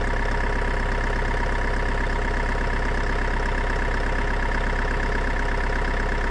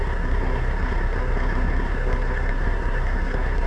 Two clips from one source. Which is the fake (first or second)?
second